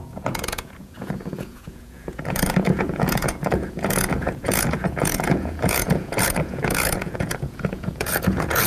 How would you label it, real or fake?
fake